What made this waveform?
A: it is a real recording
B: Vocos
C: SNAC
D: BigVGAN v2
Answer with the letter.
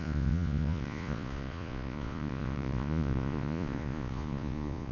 B